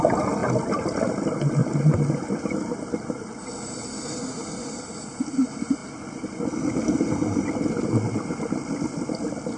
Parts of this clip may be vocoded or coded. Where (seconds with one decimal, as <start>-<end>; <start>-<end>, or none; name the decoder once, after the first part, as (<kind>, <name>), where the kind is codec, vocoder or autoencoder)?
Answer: none